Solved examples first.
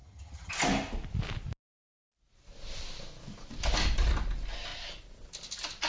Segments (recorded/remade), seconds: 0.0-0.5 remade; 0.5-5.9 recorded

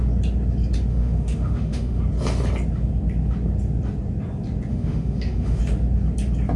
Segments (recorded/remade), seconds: 0.0-0.9 recorded; 0.9-2.0 remade; 2.0-4.7 recorded; 4.7-5.6 remade; 5.6-6.6 recorded